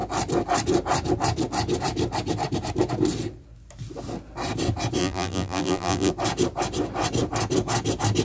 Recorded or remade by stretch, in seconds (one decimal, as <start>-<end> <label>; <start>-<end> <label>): 0.0-5.0 recorded; 5.0-6.1 remade; 6.1-8.2 recorded